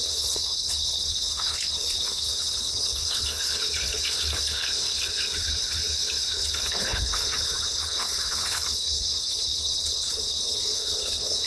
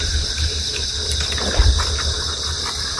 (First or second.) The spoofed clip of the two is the first